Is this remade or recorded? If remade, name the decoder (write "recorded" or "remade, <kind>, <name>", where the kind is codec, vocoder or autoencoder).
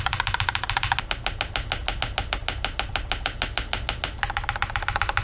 recorded